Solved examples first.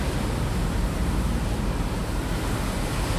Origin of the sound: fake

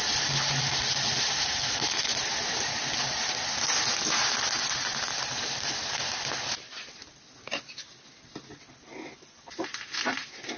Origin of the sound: real